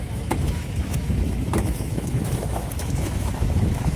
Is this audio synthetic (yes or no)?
yes